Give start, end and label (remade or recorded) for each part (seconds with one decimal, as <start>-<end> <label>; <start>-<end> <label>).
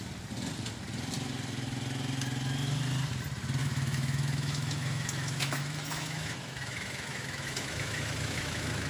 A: 0.0-3.6 recorded; 3.6-8.9 remade